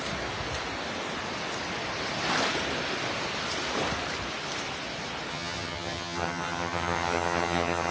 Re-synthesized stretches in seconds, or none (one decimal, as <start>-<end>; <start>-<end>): 5.3-7.9